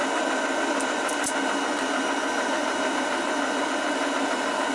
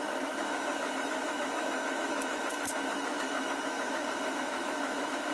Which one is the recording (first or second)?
first